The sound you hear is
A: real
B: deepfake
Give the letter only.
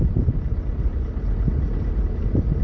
A